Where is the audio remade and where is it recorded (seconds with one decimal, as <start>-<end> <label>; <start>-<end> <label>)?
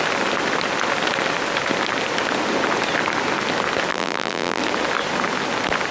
0.0-3.9 recorded; 3.9-4.6 remade; 4.6-5.9 recorded